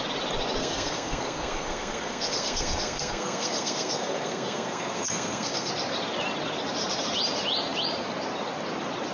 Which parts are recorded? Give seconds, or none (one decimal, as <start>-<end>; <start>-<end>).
0.0-0.6; 5.7-9.1